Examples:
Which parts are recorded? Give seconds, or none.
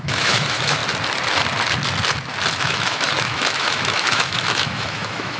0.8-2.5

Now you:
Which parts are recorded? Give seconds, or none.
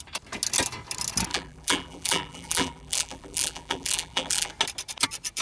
0.0-1.3; 4.5-5.4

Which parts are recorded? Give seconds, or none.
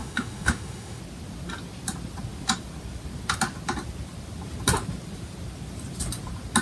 1.0-6.6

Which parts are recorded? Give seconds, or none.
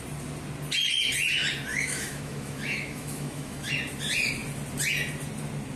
0.0-1.7; 3.7-5.8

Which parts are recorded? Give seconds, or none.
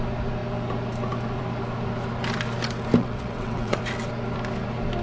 0.0-3.0; 3.8-5.0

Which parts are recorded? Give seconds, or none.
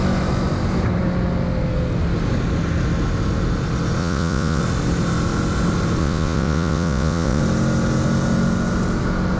0.0-4.0; 4.6-6.0; 7.4-9.4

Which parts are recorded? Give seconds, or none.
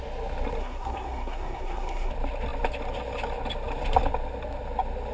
0.0-0.6; 2.1-5.1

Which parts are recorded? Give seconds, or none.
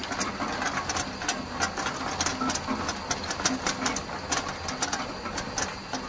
0.0-6.1